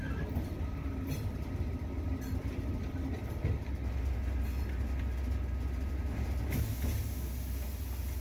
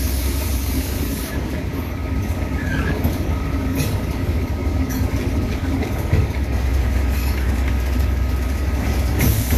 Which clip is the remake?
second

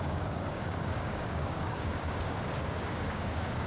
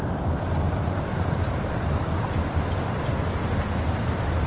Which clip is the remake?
first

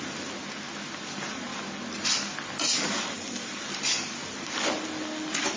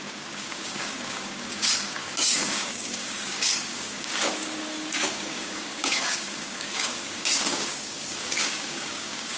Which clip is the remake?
second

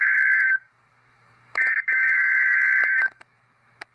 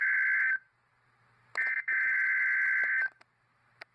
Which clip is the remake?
first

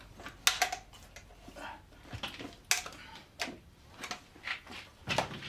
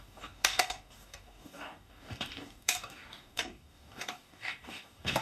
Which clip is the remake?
second